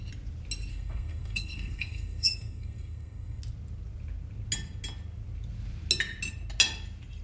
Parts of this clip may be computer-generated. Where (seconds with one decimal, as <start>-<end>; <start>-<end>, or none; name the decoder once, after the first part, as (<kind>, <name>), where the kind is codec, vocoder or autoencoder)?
0.7-3.4 (codec, SNAC)